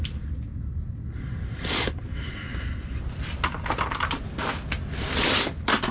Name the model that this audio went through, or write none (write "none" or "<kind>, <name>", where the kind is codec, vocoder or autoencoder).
none